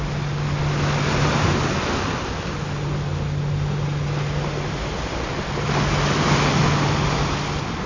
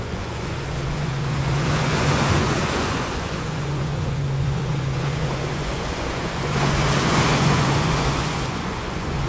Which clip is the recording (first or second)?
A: first